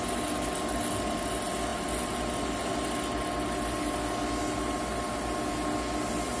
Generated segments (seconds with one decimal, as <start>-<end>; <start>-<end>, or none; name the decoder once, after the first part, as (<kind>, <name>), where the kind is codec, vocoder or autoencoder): none